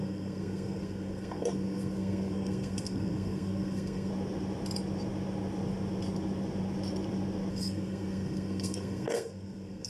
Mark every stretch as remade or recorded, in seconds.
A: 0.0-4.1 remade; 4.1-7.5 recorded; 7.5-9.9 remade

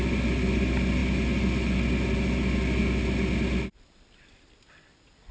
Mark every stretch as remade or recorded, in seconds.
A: 0.0-5.3 recorded

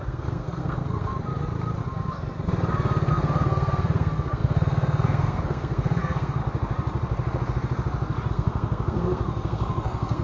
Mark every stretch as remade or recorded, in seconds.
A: 0.0-1.1 remade; 1.1-3.1 recorded; 3.1-6.4 remade; 6.4-8.3 recorded; 8.3-10.2 remade

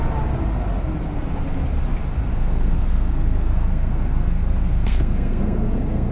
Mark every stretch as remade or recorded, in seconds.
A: 0.0-2.3 recorded; 2.3-6.1 remade

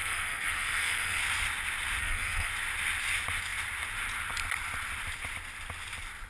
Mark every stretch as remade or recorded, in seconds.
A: 0.0-1.2 remade; 1.2-2.0 recorded; 2.0-2.5 remade; 2.5-6.3 recorded